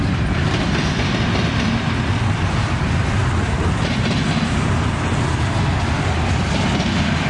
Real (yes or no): yes